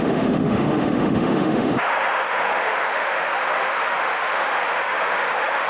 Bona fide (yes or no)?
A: no